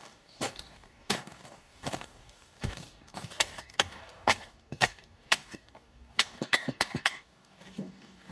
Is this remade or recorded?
remade